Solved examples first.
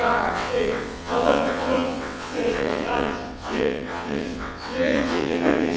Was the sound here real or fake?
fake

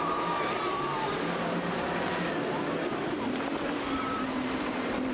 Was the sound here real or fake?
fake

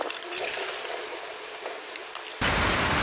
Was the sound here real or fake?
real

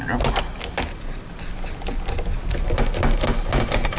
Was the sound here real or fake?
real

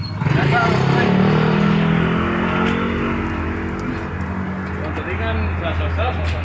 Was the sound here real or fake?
real